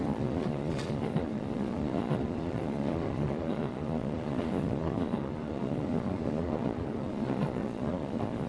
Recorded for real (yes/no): no